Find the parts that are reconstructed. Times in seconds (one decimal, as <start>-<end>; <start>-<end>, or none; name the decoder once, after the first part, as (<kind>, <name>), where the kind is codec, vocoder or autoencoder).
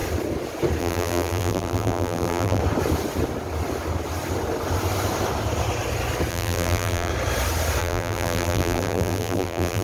0.8-2.6 (vocoder, BigVGAN v2); 6.3-7.1; 7.8-9.8